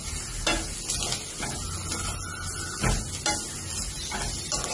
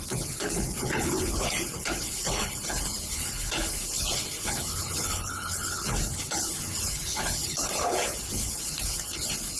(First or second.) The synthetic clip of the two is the second